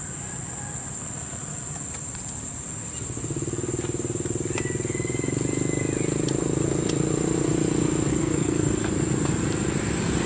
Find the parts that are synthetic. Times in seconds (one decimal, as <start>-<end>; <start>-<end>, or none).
8.1-8.9